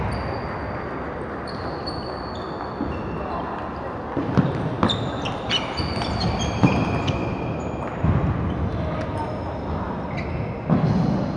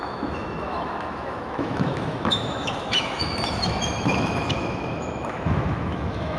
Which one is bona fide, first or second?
first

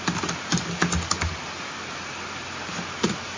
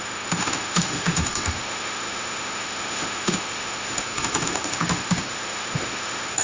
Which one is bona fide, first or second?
first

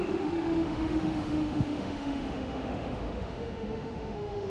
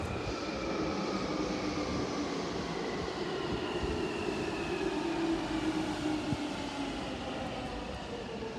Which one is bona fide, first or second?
second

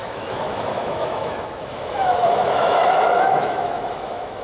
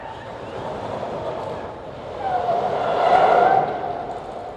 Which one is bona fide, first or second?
second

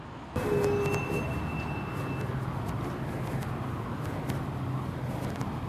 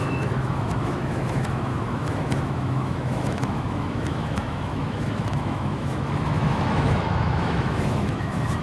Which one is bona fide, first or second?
first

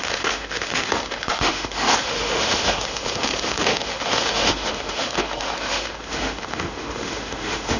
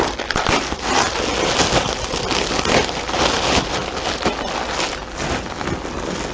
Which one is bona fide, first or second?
second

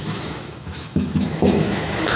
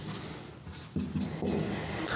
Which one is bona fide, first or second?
second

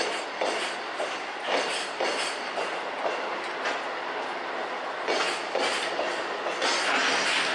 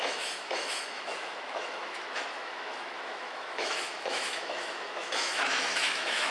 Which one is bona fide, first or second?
first